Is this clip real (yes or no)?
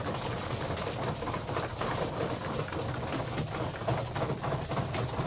yes